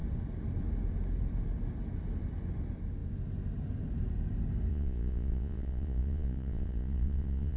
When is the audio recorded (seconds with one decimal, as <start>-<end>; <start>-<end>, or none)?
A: 0.0-4.7